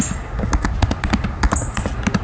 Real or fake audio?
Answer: real